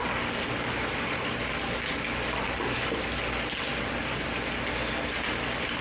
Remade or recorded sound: recorded